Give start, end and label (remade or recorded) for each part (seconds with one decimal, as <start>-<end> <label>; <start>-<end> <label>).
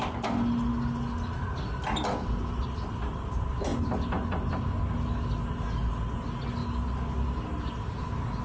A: 0.0-8.4 recorded